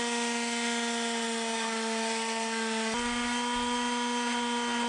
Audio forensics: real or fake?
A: real